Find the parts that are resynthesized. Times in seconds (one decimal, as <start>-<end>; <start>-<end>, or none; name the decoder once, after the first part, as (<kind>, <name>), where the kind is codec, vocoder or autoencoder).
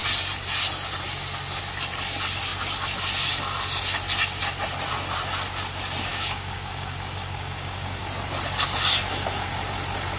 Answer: 6.1-8.0 (codec, DAC)